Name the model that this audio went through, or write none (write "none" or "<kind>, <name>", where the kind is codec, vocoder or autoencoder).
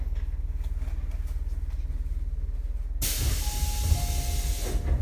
none